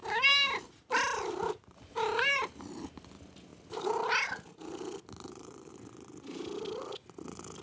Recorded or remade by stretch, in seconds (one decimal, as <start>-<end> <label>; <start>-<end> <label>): 0.0-7.6 recorded